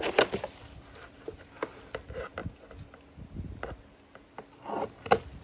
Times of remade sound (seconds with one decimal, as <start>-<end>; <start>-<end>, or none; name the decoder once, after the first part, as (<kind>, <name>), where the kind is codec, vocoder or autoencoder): none